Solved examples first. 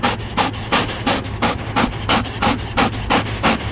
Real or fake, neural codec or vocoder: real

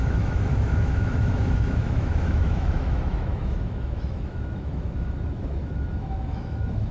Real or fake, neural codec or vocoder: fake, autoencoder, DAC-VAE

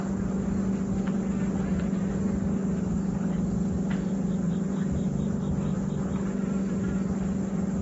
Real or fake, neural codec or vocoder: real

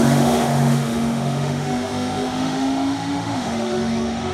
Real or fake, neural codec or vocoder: fake, autoencoder, DAC-VAE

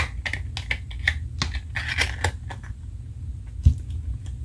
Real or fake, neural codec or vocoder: real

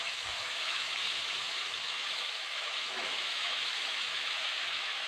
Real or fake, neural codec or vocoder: fake, autoencoder, DAC-VAE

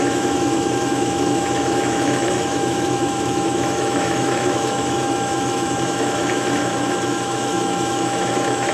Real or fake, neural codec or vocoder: fake, autoencoder, DAC-VAE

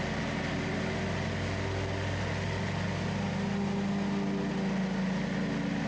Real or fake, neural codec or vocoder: real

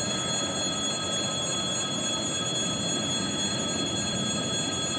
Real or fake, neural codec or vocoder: real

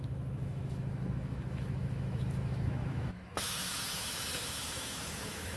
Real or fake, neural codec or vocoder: fake, autoencoder, DAC-VAE